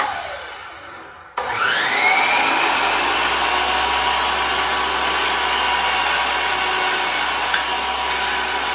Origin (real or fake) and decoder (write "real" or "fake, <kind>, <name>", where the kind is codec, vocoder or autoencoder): real